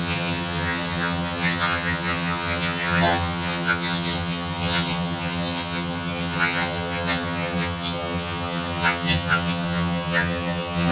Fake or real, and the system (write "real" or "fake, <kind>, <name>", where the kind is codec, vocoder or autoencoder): fake, vocoder, HiFi-GAN